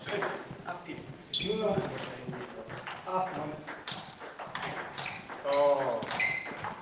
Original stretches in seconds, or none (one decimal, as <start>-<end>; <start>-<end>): 0.0-6.8